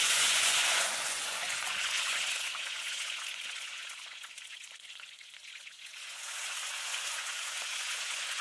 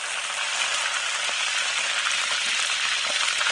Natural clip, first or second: second